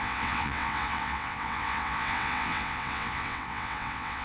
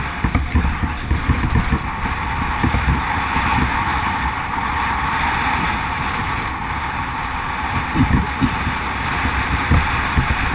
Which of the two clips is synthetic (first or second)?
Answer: first